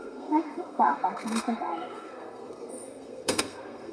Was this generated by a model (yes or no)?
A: yes